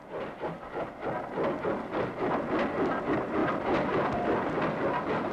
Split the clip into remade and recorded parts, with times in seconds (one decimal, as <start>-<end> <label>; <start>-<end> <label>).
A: 0.0-5.3 recorded